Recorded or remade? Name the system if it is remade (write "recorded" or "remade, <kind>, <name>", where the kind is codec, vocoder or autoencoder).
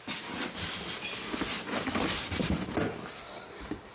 recorded